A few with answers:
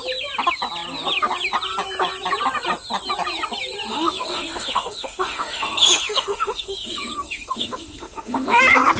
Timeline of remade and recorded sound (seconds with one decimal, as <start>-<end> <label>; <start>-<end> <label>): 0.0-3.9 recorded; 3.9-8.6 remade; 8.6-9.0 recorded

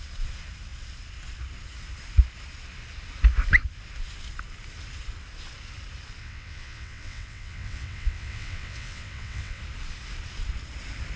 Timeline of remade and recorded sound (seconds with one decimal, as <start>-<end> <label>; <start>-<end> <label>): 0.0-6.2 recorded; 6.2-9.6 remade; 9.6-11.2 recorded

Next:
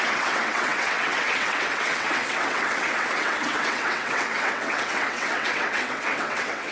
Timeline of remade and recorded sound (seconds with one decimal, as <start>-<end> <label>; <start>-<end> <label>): 0.0-6.7 remade

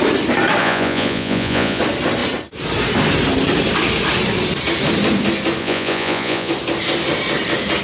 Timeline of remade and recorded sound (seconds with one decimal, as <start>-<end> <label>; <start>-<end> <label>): 0.0-0.6 recorded; 0.6-1.8 remade; 1.8-5.6 recorded; 5.6-6.5 remade; 6.5-7.8 recorded

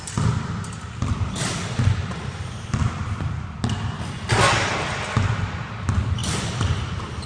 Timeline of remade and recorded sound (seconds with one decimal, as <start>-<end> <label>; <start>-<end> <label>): 0.0-7.3 recorded

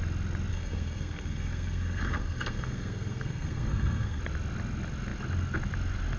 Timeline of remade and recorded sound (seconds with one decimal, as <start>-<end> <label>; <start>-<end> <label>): 0.0-0.5 recorded; 0.5-4.2 remade; 4.2-6.2 recorded

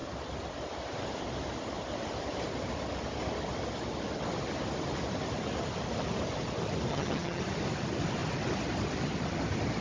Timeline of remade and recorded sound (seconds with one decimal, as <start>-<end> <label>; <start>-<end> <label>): 0.0-6.9 recorded; 6.9-7.4 remade; 7.4-9.8 recorded